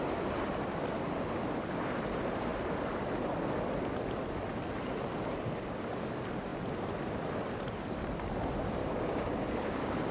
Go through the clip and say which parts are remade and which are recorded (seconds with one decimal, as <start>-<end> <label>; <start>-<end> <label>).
0.0-8.8 recorded; 8.8-10.1 remade